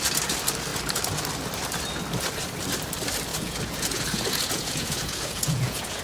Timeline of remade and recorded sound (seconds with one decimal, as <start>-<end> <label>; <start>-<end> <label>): 0.0-3.3 recorded; 3.3-6.0 remade